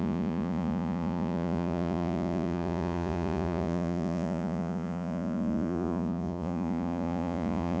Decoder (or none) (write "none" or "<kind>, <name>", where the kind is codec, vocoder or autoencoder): vocoder, Vocos